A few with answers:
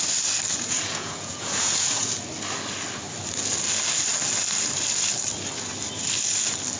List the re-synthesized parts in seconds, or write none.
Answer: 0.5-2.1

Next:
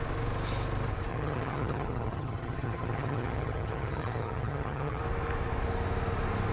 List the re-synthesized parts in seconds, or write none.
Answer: 1.1-5.0